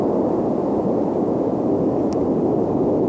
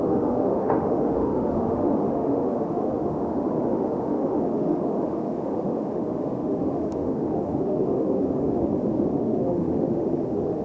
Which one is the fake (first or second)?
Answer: second